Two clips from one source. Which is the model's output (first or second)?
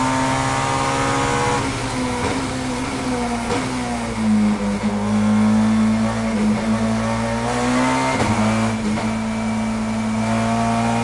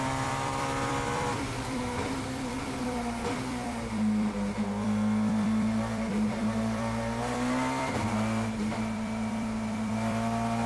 second